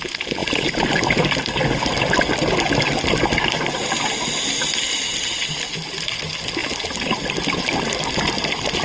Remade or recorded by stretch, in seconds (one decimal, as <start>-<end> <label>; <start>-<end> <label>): 0.0-8.8 recorded